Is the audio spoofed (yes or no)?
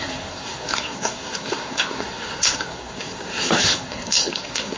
yes